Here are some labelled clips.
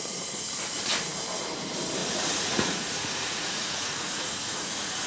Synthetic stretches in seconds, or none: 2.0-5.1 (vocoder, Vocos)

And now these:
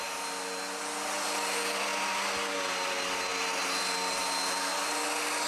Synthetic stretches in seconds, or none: none

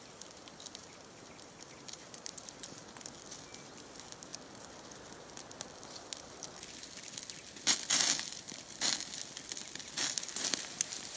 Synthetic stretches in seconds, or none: 0.8-2.8 (vocoder, BigVGAN v2)

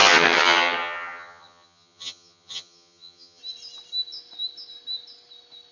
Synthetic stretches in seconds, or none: 0.0-3.4 (vocoder, HiFi-GAN)